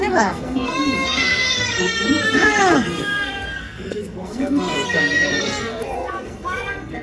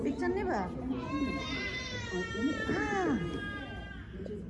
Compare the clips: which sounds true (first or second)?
second